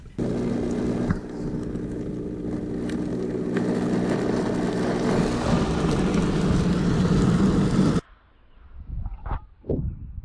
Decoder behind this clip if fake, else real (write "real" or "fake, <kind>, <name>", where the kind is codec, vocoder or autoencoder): real